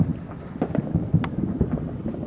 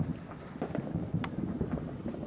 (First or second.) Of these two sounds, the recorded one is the second